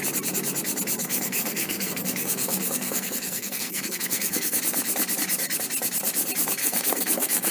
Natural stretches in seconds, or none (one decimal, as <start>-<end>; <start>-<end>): 0.0-1.0; 4.6-6.6